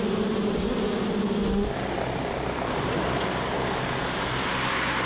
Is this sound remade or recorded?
recorded